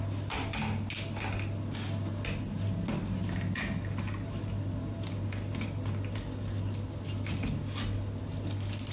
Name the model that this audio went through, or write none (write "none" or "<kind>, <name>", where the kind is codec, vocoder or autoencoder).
none